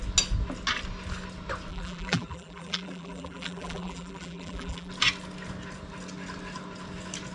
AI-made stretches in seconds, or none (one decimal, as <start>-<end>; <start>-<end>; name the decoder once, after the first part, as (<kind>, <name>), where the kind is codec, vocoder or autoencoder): 1.7-4.9 (vocoder, BigVGAN v2)